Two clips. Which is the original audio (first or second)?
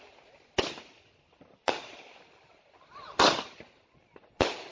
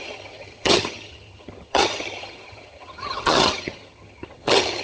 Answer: first